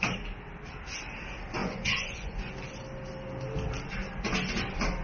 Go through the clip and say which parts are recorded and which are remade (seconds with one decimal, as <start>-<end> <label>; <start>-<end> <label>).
0.0-1.6 recorded; 1.6-2.5 remade; 2.5-5.0 recorded